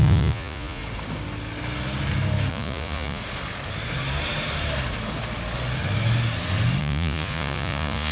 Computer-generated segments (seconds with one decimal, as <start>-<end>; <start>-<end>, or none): 0.0-0.8; 2.5-3.2; 6.8-8.1